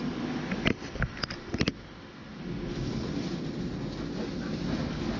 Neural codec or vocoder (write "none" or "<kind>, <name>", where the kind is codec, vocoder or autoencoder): none